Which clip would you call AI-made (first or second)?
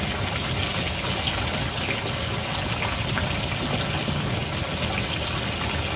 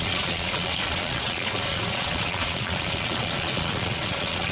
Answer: second